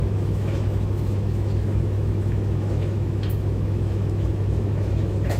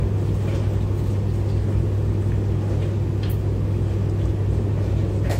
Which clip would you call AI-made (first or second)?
first